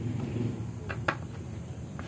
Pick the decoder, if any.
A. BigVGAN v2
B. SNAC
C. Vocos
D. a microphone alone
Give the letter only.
D